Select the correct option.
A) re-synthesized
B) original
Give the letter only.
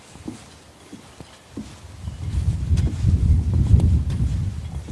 B